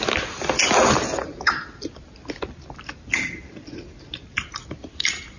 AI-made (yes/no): no